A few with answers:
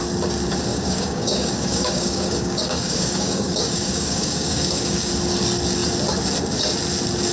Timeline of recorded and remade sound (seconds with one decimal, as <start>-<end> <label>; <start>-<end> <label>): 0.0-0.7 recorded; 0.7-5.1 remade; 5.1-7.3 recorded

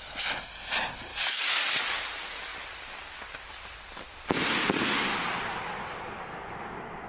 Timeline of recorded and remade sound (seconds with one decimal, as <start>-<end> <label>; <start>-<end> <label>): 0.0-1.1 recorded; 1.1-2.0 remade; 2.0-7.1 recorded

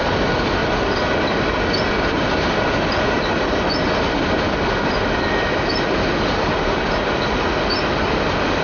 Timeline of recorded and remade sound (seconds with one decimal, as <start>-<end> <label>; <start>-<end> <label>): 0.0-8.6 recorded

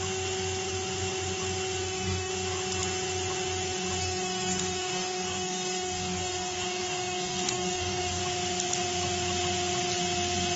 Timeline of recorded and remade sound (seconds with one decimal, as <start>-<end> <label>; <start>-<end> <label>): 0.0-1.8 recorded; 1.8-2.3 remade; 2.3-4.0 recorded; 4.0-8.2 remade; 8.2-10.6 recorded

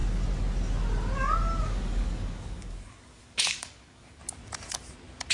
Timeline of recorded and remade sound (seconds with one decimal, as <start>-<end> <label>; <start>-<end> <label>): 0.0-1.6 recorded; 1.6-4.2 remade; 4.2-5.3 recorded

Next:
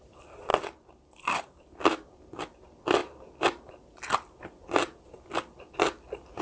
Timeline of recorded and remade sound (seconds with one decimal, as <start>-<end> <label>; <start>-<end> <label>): 0.0-6.4 recorded

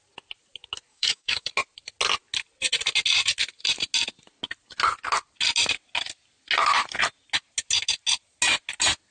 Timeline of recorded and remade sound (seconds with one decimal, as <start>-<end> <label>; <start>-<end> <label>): 0.0-0.9 recorded; 0.9-1.5 remade; 1.5-9.1 recorded